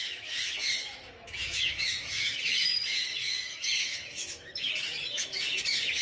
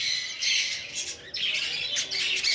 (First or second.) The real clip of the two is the second